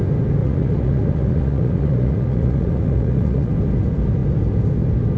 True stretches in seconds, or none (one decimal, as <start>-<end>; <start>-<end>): 0.0-0.4; 3.5-5.2